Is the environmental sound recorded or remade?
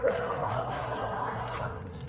remade